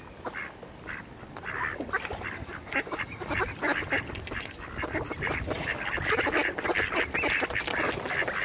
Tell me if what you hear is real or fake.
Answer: real